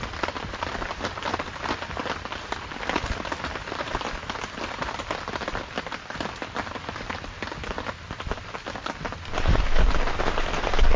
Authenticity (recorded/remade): recorded